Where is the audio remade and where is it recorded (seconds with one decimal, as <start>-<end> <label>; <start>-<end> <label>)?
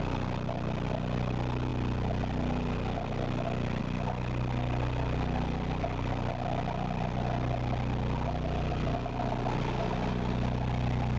0.0-11.2 recorded